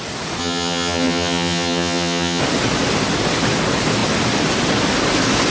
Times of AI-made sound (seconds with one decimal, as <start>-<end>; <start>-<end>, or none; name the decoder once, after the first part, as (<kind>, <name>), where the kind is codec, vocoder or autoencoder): 0.4-2.4 (vocoder, HiFi-GAN)